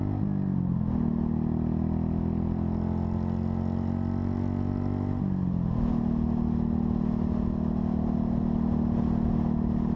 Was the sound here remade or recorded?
recorded